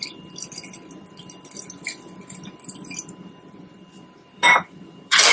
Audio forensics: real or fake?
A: fake